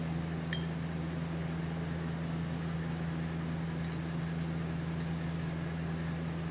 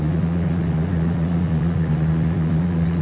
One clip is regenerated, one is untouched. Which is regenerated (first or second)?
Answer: second